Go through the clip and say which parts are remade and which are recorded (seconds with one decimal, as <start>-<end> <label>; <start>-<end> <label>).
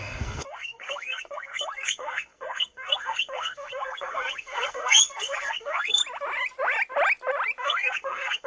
0.0-6.0 remade; 6.0-7.6 recorded; 7.6-8.5 remade